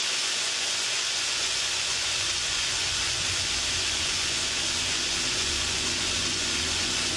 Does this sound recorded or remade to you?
remade